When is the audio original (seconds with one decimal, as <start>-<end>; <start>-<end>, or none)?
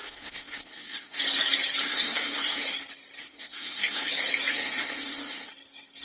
1.2-1.8; 2.7-3.2; 4.1-4.5; 5.5-6.0